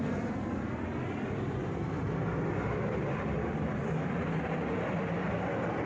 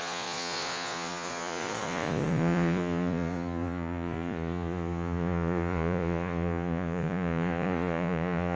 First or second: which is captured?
first